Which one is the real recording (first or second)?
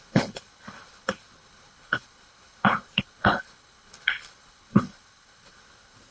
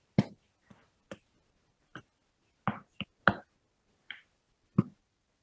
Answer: second